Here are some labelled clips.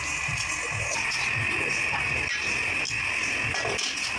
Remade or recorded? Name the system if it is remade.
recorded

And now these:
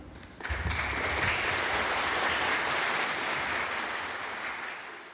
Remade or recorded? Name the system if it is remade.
recorded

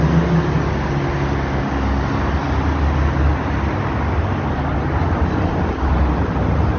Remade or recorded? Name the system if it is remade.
recorded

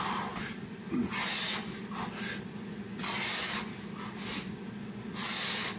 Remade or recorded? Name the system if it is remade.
recorded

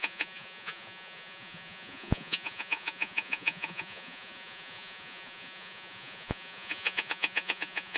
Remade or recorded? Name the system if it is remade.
remade, vocoder, Vocos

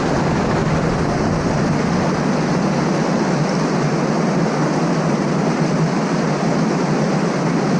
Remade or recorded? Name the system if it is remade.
recorded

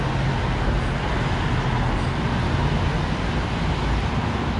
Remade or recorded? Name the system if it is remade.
recorded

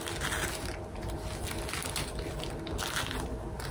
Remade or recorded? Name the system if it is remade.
recorded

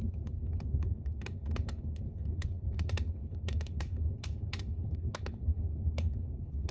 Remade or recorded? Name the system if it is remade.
remade, codec, HILCodec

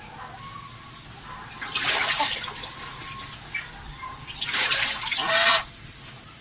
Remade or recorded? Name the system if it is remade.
recorded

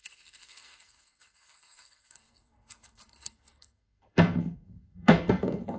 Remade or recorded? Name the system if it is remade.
remade, codec, SNAC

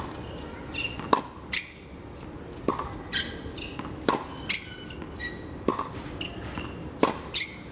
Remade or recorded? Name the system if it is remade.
recorded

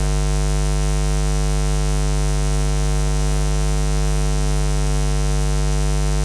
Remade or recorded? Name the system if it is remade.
recorded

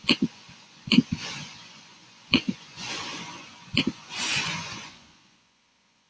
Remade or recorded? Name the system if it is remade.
remade, vocoder, Vocos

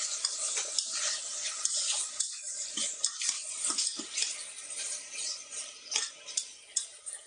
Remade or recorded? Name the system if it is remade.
recorded